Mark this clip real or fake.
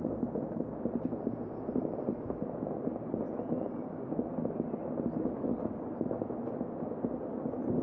real